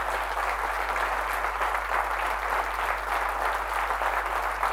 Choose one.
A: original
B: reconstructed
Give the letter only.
A